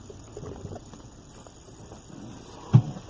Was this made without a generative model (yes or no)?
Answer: yes